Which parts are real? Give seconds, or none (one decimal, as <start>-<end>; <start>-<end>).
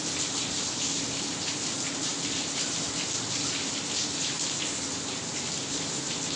0.0-6.4